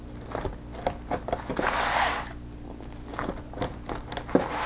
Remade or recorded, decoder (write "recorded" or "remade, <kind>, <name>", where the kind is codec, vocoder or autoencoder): recorded